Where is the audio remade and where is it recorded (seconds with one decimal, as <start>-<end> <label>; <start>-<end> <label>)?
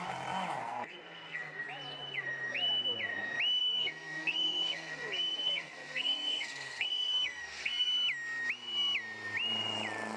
0.0-0.6 recorded; 0.6-1.6 remade; 1.6-3.6 recorded; 3.6-7.9 remade; 7.9-10.2 recorded